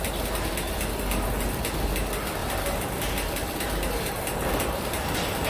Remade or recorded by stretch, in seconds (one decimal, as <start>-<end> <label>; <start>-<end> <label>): 0.0-2.4 recorded; 2.4-4.1 remade; 4.1-5.5 recorded